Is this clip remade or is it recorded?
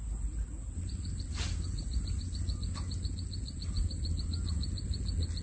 recorded